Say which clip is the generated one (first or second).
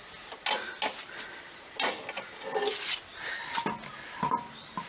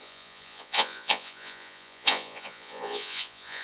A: second